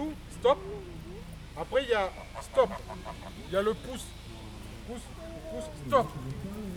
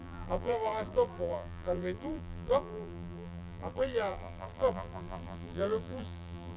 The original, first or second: first